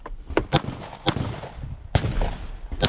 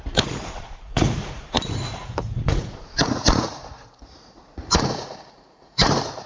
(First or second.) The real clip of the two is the first